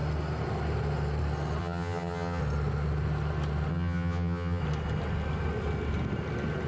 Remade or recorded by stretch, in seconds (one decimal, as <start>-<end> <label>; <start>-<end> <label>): 0.0-1.6 recorded; 1.6-2.4 remade; 2.4-3.7 recorded; 3.7-4.6 remade; 4.6-6.7 recorded